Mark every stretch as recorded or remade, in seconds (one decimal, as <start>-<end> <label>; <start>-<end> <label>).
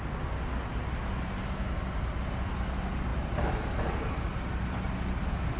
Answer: 0.0-3.1 recorded; 3.1-4.5 remade; 4.5-5.6 recorded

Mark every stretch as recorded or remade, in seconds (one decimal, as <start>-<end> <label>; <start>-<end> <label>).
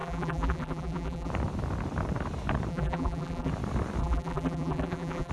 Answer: 0.0-1.3 remade; 1.3-2.7 recorded; 2.7-3.5 remade; 3.5-4.0 recorded; 4.0-5.3 remade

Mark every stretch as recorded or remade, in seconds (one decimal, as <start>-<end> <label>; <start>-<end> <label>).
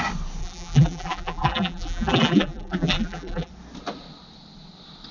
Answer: 0.0-0.4 recorded; 0.4-3.5 remade; 3.5-5.1 recorded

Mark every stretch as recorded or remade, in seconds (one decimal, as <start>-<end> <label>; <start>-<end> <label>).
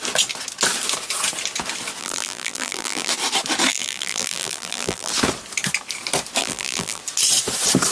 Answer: 0.0-2.0 recorded; 2.0-3.1 remade; 3.1-3.7 recorded; 3.7-5.1 remade; 5.1-6.4 recorded; 6.4-7.0 remade; 7.0-7.9 recorded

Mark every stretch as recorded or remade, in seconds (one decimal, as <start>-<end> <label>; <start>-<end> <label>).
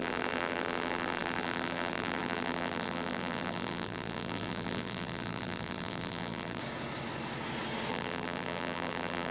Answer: 0.0-6.6 remade; 6.6-7.9 recorded; 7.9-9.3 remade